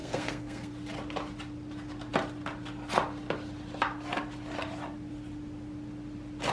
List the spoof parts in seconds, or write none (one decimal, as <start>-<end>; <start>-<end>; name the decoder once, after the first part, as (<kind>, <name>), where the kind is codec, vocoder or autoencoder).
0.0-0.7 (codec, SNAC)